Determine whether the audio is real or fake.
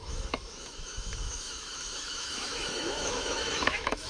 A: fake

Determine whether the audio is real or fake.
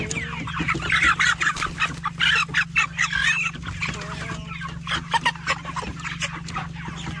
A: real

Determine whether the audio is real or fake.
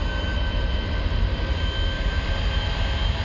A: real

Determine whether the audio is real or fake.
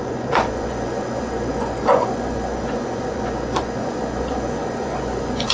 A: fake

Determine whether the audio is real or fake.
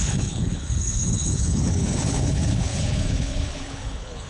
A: fake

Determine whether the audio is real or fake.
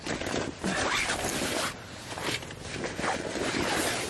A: real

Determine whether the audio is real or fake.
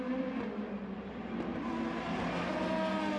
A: real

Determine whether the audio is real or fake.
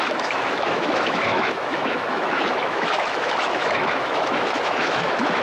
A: fake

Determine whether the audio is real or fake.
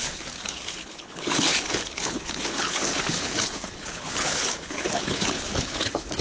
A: fake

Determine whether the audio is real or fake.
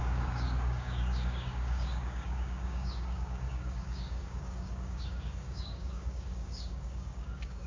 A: fake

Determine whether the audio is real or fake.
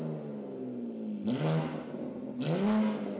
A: real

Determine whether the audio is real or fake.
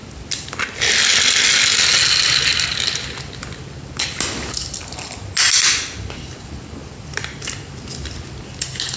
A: real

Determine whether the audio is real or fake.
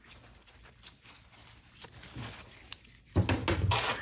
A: real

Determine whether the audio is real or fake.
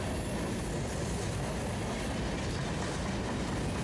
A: real